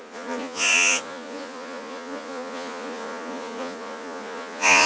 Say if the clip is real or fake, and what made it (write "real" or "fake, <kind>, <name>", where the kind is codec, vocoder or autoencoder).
fake, vocoder, Vocos